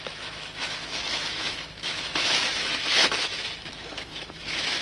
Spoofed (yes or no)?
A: yes